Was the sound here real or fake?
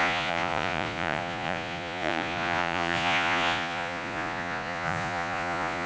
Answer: fake